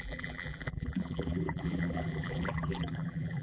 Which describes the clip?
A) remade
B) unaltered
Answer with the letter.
A